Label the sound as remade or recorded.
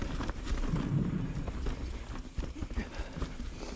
recorded